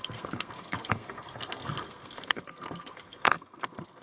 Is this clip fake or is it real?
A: fake